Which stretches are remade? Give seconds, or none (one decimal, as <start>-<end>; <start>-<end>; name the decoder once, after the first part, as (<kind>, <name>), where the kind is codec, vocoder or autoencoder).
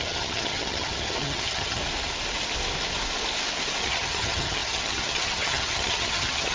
0.0-1.8 (vocoder, HiFi-GAN); 3.8-6.5